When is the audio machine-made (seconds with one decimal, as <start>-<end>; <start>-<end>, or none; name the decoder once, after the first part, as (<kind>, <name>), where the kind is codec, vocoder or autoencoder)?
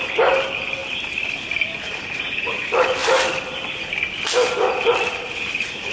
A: none